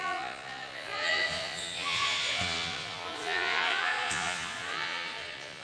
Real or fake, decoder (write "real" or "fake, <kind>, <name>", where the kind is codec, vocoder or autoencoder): fake, vocoder, Vocos